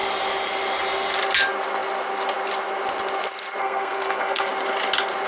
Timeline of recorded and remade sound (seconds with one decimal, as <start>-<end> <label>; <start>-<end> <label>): 0.0-3.6 recorded; 3.6-4.5 remade; 4.5-5.3 recorded